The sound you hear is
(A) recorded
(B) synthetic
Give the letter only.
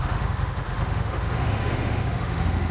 B